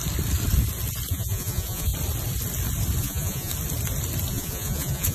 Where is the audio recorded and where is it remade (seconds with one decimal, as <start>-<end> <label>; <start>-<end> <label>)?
0.0-1.1 recorded; 1.1-1.9 remade; 1.9-3.0 recorded; 3.0-3.5 remade; 3.5-4.3 recorded; 4.3-5.1 remade